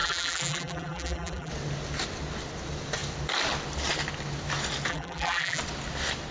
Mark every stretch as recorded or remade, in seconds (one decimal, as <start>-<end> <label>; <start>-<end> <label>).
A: 0.0-1.5 remade; 1.5-4.9 recorded; 4.9-5.6 remade; 5.6-6.3 recorded